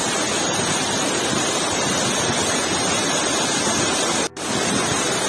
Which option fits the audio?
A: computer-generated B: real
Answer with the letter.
B